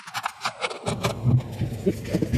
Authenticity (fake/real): real